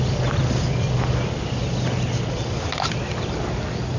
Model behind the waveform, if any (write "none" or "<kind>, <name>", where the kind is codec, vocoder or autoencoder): none